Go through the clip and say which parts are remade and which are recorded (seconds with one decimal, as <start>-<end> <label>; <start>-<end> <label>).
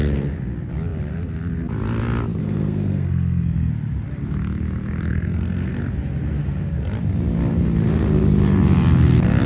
0.0-2.4 recorded; 2.4-3.7 remade; 3.7-5.1 recorded; 5.1-5.8 remade; 5.8-9.5 recorded